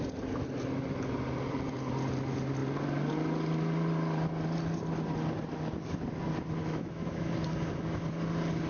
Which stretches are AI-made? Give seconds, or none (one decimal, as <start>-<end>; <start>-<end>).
6.6-7.3